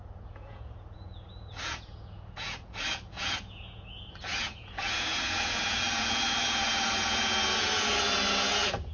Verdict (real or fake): fake